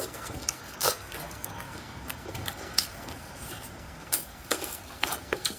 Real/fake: fake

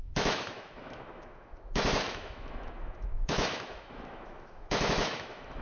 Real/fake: fake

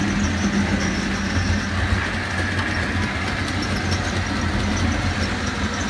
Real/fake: real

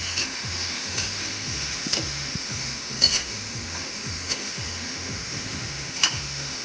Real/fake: fake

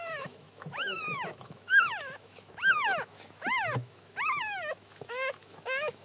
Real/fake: fake